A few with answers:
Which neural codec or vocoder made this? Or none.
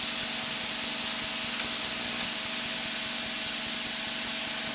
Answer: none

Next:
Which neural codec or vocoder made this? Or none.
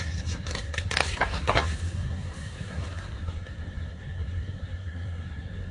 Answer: codec, SNAC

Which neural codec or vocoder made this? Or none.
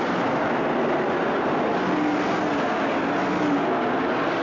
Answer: none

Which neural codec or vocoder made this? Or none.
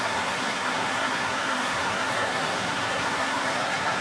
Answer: codec, SNAC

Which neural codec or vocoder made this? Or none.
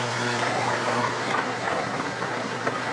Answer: codec, SNAC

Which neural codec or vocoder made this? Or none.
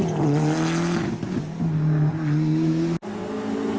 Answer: none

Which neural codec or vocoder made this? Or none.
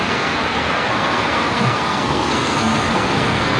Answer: codec, SNAC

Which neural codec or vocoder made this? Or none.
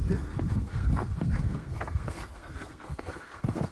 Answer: codec, SNAC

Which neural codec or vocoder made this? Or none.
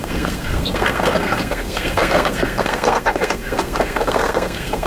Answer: codec, SNAC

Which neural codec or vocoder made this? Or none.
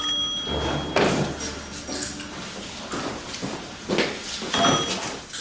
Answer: none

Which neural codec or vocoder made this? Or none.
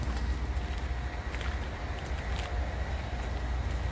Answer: none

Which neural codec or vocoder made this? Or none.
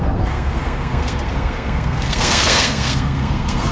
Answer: codec, SNAC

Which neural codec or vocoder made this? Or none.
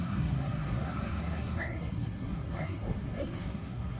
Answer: codec, SNAC